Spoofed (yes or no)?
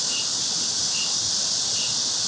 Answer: no